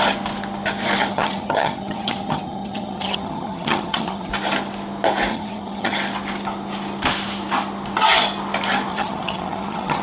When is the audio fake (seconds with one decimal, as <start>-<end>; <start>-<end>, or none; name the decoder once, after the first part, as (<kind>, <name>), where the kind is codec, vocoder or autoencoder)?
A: 1.1-4.3 (vocoder, HiFi-GAN); 5.3-5.9; 8.9-10.0